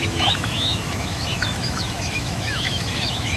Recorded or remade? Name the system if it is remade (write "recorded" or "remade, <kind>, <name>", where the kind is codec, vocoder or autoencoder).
remade, autoencoder, DAC-VAE